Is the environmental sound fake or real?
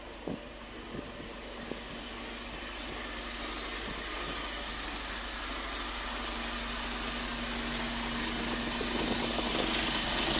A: real